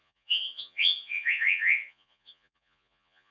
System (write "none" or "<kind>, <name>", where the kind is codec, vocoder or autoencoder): vocoder, Vocos